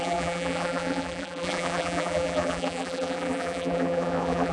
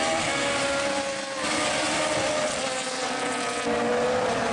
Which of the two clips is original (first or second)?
second